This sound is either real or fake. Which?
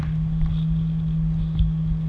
real